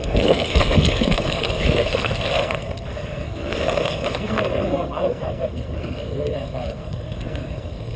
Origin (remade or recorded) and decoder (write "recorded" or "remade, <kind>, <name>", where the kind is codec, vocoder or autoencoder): remade, codec, SNAC